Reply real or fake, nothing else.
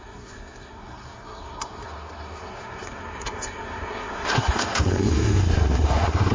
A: fake